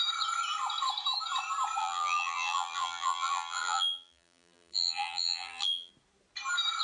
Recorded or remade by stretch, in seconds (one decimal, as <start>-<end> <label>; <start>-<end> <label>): 0.0-1.8 recorded; 1.8-5.9 remade; 5.9-6.8 recorded